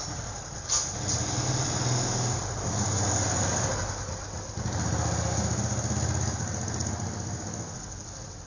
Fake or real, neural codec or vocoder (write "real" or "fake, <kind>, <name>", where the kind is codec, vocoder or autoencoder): real